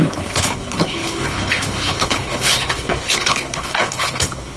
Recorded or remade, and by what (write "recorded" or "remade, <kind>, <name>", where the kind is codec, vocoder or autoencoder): remade, codec, HILCodec